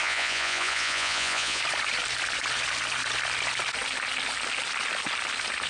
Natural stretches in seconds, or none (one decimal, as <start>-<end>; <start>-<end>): 1.6-5.7